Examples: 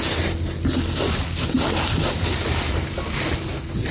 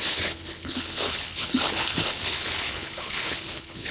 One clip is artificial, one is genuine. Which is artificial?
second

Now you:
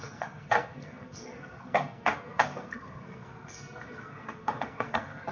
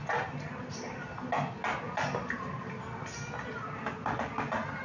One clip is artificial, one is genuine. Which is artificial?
first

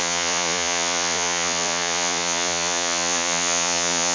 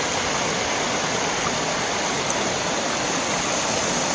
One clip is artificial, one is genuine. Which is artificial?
first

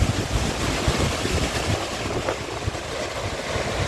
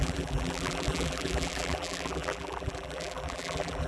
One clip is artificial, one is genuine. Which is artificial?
second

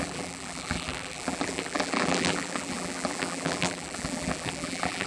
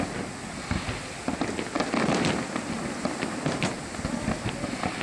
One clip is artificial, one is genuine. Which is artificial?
first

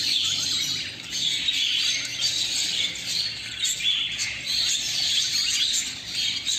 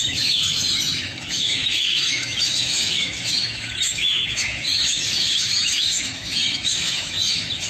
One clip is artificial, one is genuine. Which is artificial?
second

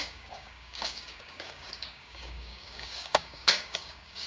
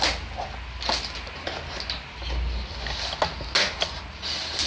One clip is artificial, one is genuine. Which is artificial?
first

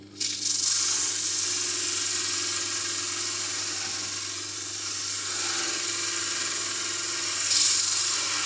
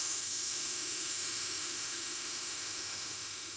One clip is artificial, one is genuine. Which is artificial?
second